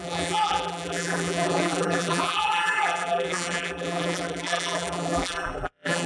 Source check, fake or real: fake